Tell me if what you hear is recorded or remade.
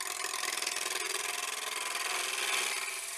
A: recorded